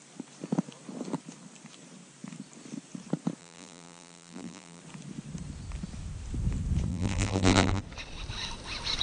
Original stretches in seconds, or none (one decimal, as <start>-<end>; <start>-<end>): 0.0-3.4; 4.8-6.9; 7.8-9.0